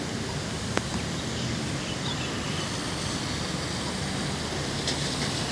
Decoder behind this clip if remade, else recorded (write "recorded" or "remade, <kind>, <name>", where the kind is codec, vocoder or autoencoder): recorded